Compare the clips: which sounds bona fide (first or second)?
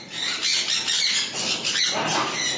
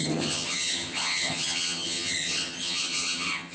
first